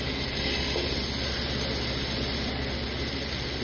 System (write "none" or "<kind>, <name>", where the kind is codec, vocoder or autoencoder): none